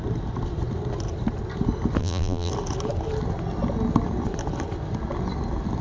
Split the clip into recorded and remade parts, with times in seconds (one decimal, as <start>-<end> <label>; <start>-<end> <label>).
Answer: 0.0-2.0 recorded; 2.0-2.5 remade; 2.5-5.8 recorded

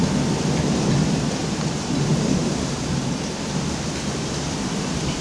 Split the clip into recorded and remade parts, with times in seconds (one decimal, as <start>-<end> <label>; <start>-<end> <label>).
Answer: 0.0-1.4 recorded; 1.4-4.5 remade; 4.5-5.2 recorded

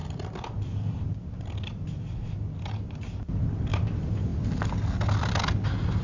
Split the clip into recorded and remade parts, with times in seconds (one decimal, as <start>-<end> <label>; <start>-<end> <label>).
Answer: 0.0-6.0 recorded

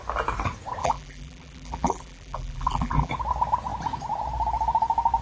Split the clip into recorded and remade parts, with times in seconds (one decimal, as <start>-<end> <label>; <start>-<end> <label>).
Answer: 0.0-0.8 recorded; 0.8-3.1 remade; 3.1-5.2 recorded

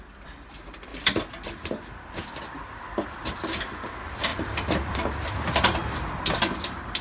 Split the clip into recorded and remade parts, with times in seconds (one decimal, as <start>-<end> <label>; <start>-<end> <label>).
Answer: 0.0-4.3 remade; 4.3-5.4 recorded; 5.4-7.0 remade

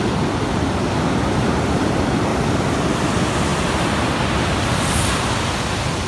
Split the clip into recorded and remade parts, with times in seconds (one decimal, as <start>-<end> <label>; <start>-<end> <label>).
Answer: 0.0-2.3 recorded; 2.3-3.1 remade; 3.1-6.1 recorded

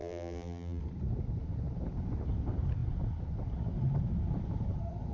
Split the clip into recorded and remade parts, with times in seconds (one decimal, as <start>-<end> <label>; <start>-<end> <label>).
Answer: 0.0-0.8 remade; 0.8-5.1 recorded